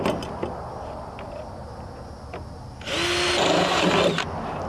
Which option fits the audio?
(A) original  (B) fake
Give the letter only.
A